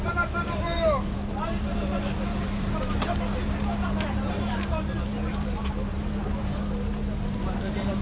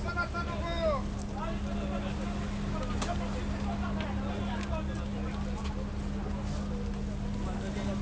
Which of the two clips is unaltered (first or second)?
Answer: second